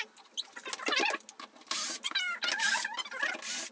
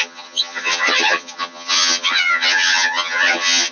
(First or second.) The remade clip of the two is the second